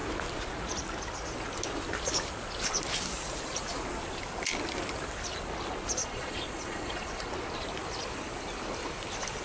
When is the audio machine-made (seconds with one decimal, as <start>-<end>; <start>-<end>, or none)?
6.0-7.3